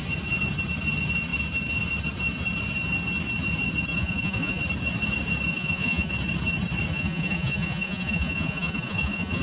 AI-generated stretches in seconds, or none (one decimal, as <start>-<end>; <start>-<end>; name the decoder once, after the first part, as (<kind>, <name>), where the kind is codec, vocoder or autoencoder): 3.9-4.6 (vocoder, Vocos); 5.5-6.1; 6.9-9.4